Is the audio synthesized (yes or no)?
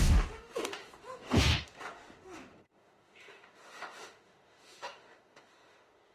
yes